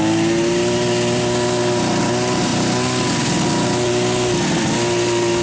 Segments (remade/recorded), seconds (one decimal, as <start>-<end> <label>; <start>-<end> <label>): 0.0-5.4 recorded

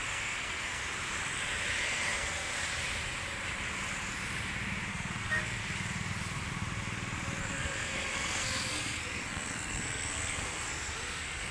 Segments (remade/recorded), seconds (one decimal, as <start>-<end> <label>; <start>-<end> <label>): 0.0-0.8 remade; 0.8-1.8 recorded; 1.8-2.5 remade; 2.5-4.9 recorded; 4.9-5.6 remade; 5.6-7.4 recorded; 7.4-11.5 remade

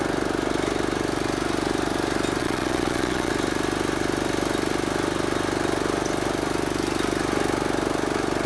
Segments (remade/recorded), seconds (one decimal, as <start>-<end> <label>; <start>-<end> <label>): 0.0-2.4 recorded; 2.4-3.3 remade; 3.3-8.5 recorded

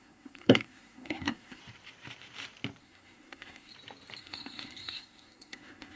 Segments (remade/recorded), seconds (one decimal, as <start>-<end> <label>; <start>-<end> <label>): 0.0-1.6 remade; 1.6-2.8 recorded; 2.8-3.7 remade; 3.7-4.2 recorded; 4.2-6.0 remade

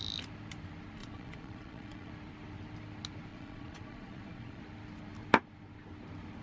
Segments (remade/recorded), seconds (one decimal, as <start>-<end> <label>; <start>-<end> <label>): 0.0-1.0 recorded; 1.0-2.1 remade; 2.1-3.3 recorded; 3.3-4.6 remade; 4.6-6.4 recorded

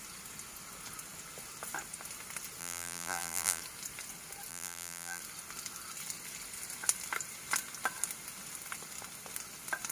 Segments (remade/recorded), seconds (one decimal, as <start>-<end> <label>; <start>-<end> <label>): 0.0-2.6 recorded; 2.6-3.6 remade; 3.6-4.5 recorded; 4.5-5.2 remade; 5.2-9.9 recorded